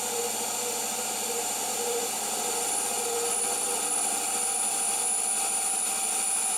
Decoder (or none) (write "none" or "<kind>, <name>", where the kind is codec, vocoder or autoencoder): none